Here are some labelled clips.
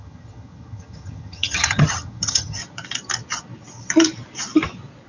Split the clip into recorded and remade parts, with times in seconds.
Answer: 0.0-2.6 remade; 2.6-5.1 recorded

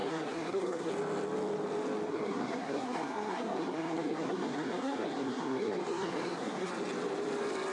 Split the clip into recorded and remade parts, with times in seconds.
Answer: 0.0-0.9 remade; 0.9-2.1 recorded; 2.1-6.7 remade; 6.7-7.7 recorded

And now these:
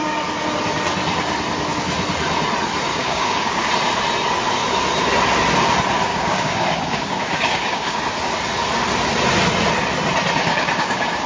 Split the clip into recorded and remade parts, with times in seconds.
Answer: 0.0-2.9 recorded; 2.9-3.7 remade; 3.7-6.1 recorded; 6.1-8.0 remade; 8.0-10.4 recorded; 10.4-11.3 remade

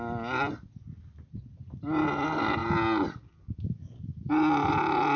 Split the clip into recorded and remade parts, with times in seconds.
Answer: 0.0-5.2 recorded

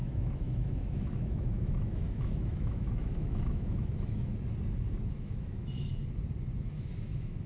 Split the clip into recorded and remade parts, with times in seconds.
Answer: 0.0-4.3 remade; 4.3-5.1 recorded; 5.1-6.0 remade; 6.0-6.7 recorded; 6.7-7.5 remade

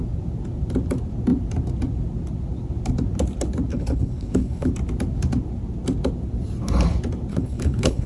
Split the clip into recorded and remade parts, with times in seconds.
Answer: 0.0-3.7 recorded; 3.7-4.7 remade; 4.7-7.3 recorded; 7.3-8.1 remade